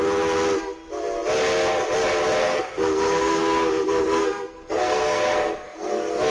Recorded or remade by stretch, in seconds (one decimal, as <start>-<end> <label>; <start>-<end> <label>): 0.0-2.4 recorded; 2.4-6.3 remade